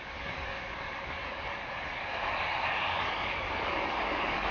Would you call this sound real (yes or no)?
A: no